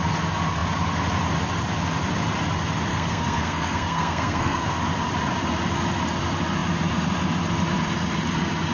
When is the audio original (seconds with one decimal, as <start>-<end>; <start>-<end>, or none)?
0.0-2.9; 4.8-8.7